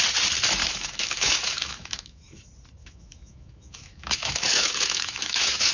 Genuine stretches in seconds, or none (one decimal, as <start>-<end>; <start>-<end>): 0.0-0.6; 2.4-2.8